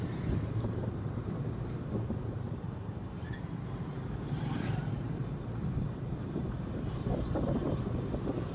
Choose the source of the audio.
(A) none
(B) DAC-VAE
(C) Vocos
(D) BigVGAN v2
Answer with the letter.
D